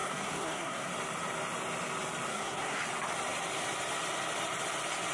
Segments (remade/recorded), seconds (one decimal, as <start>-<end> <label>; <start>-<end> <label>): 0.0-0.9 remade; 0.9-2.3 recorded; 2.3-2.8 remade; 2.8-5.1 recorded